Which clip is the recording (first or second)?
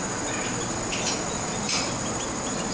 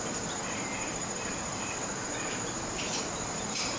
first